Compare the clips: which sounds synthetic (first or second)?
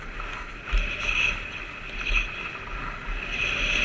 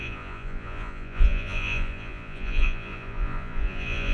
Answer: second